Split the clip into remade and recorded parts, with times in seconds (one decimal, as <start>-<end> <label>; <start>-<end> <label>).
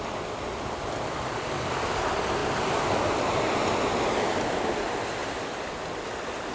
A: 0.0-6.5 recorded